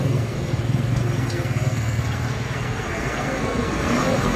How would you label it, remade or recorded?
remade